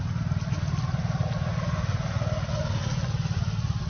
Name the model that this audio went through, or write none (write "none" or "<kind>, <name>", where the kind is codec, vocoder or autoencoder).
none